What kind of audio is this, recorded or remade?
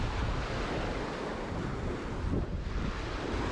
recorded